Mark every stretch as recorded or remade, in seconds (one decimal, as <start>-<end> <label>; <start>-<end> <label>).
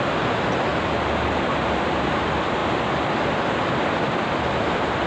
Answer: 0.0-0.7 recorded; 0.7-1.6 remade; 1.6-5.1 recorded